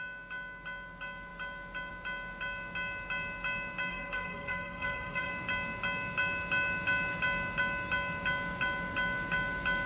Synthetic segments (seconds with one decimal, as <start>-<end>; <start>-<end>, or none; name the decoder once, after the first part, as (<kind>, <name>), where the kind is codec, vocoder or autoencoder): 3.9-5.3 (codec, SNAC)